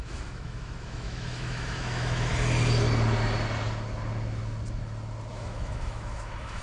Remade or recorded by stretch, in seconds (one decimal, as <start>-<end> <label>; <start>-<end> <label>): 0.0-2.3 remade; 2.3-5.3 recorded; 5.3-6.6 remade